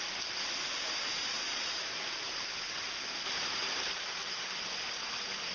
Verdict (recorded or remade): recorded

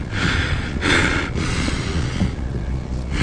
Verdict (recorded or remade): remade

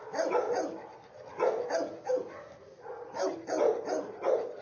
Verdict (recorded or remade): recorded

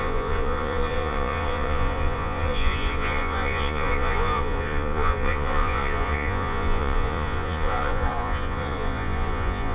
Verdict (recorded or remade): remade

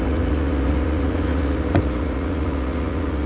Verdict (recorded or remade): remade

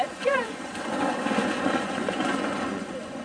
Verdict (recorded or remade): remade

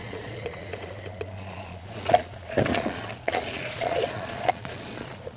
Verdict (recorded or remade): remade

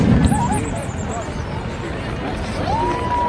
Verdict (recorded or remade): recorded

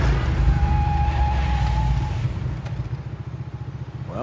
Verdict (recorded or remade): recorded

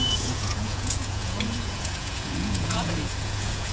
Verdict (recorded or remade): remade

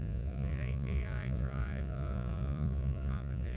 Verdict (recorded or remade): remade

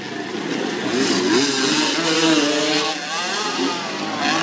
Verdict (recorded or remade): recorded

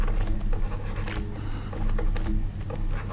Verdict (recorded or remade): recorded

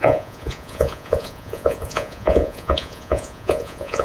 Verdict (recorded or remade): remade